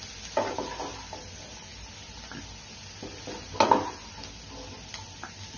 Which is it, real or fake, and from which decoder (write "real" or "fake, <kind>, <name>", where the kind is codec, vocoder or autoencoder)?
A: real